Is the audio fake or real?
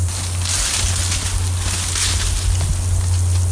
real